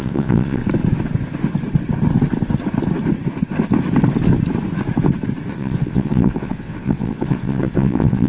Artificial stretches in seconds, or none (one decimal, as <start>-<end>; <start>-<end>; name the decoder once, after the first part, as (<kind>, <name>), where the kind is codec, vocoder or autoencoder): 0.0-0.6 (vocoder, WaveNeXt); 5.5-8.3